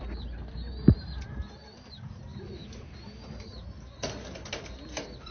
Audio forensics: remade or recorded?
recorded